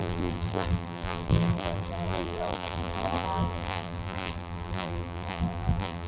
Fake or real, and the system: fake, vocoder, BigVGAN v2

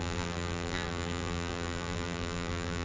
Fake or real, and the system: fake, vocoder, BigVGAN v2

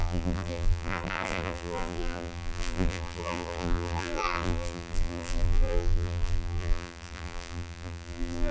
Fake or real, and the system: fake, vocoder, BigVGAN v2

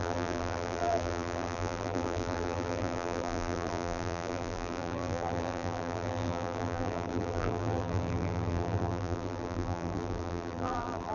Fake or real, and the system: fake, vocoder, BigVGAN v2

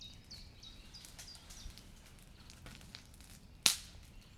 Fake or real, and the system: real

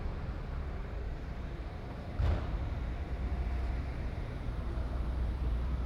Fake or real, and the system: fake, vocoder, BigVGAN v2